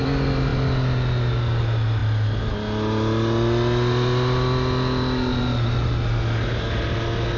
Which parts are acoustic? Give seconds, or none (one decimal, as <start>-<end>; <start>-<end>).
0.0-7.4